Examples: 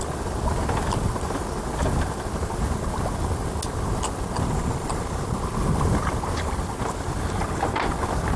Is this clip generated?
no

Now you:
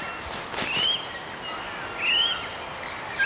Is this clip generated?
no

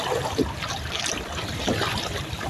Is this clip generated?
no